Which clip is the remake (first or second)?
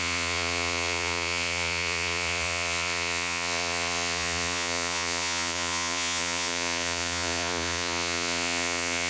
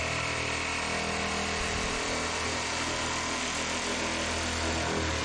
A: first